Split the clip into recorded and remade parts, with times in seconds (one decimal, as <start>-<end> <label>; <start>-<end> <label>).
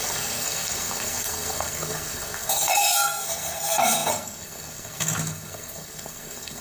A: 0.0-6.6 remade